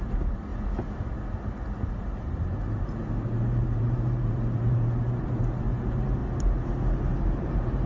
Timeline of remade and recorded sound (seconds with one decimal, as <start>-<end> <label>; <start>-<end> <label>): 0.0-0.5 remade; 0.5-1.8 recorded; 1.8-6.2 remade; 6.2-7.1 recorded; 7.1-7.9 remade